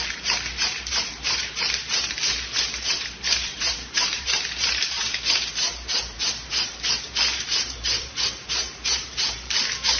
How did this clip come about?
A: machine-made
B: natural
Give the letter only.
A